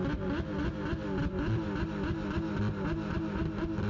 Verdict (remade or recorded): recorded